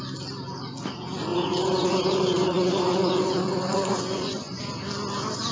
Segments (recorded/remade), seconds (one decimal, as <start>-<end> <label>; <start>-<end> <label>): 0.0-1.3 recorded; 1.3-4.6 remade; 4.6-5.5 recorded